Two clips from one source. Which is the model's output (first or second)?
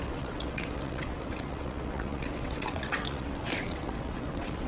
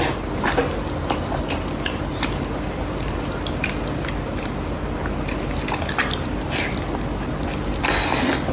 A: first